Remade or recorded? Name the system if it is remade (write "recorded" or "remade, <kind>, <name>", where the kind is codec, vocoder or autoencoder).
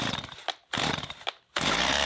recorded